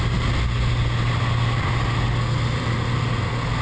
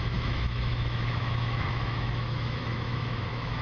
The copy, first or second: second